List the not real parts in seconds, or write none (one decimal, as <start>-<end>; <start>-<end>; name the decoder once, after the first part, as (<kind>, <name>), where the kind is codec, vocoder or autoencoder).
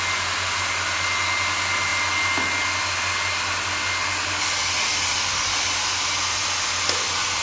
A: none